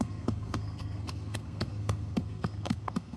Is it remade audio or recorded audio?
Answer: remade